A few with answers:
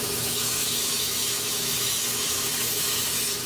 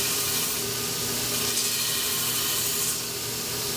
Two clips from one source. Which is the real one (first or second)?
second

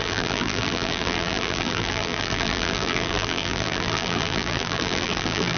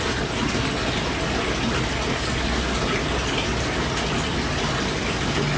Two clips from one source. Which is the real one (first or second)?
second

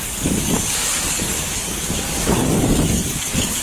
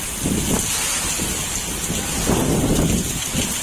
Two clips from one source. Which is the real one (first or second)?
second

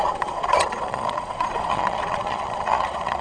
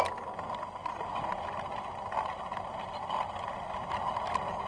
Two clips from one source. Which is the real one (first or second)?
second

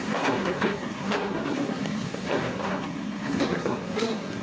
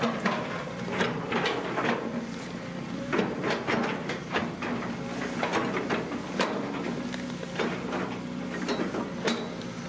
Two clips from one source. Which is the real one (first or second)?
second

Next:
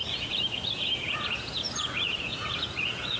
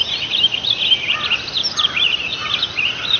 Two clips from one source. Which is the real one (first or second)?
second